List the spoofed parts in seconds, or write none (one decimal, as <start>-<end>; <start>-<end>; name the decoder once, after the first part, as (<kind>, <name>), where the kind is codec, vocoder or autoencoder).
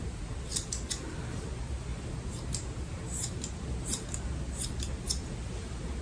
none